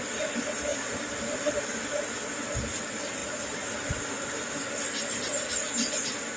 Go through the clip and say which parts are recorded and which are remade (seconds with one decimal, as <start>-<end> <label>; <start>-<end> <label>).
0.0-0.7 remade; 0.7-2.5 recorded; 2.5-3.2 remade; 3.2-4.6 recorded; 4.6-6.4 remade